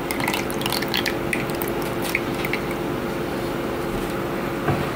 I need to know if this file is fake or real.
fake